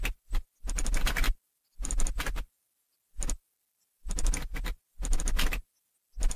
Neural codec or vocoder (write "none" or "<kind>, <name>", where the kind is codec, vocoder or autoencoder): none